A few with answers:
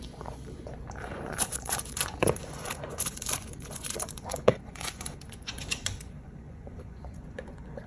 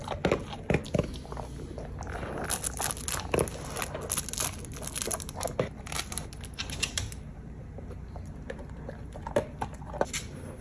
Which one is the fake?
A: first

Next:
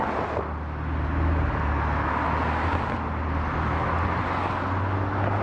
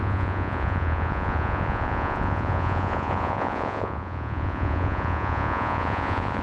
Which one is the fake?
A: second